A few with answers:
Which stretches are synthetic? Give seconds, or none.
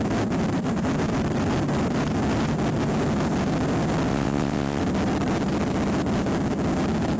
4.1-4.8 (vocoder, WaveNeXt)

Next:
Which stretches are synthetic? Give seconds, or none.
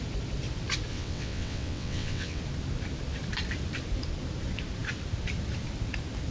0.9-2.4 (vocoder, WaveNeXt)